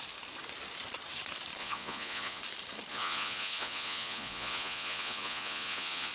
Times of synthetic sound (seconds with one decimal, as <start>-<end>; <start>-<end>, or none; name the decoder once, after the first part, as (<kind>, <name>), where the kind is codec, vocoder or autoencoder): 1.6-2.4 (vocoder, Vocos); 2.9-6.1